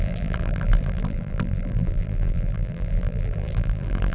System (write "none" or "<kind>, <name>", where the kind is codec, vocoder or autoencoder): vocoder, BigVGAN v2